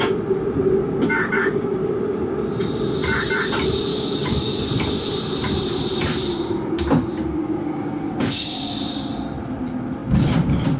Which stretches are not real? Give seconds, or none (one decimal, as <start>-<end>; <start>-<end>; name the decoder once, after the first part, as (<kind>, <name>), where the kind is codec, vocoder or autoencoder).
0.8-1.9 (codec, DAC); 3.9-4.6; 7.1-8.8